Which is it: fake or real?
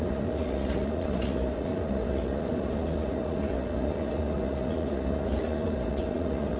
fake